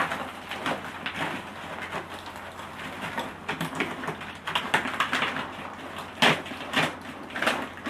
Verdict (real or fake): real